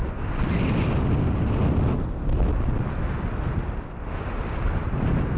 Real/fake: real